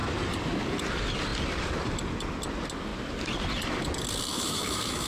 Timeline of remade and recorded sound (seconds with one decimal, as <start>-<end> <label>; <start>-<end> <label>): 0.0-4.3 recorded; 4.3-5.1 remade